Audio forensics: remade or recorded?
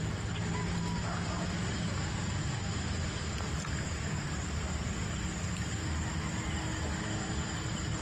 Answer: recorded